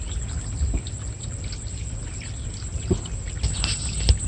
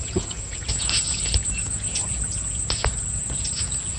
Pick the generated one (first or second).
second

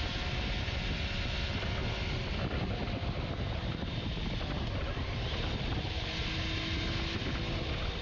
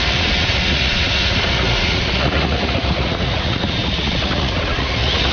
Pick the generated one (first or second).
second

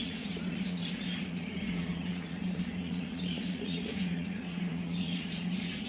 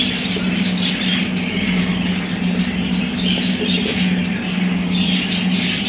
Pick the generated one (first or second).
first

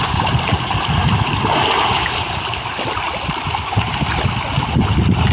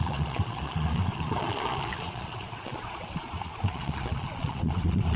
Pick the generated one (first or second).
second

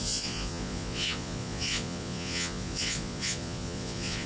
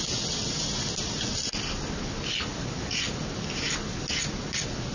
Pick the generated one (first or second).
first